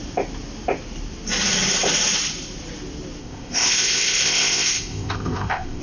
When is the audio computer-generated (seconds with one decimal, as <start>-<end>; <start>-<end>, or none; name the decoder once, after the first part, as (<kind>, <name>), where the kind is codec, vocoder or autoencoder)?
3.2-5.8 (codec, ZipCodec)